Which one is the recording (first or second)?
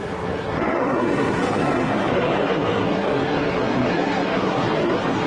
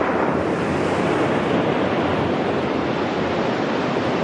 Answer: second